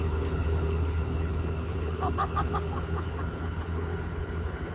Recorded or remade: remade